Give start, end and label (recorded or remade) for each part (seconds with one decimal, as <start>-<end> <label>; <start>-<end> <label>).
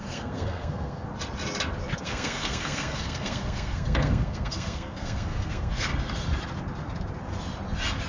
0.0-1.1 remade; 1.1-2.0 recorded; 2.0-5.9 remade; 5.9-8.1 recorded